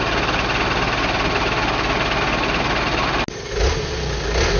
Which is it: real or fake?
real